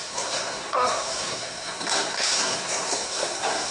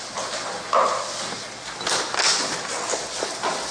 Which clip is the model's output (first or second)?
first